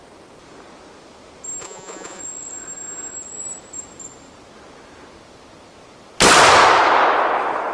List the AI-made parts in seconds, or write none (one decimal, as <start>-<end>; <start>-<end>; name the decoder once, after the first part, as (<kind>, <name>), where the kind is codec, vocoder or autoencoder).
1.6-2.2 (vocoder, Vocos)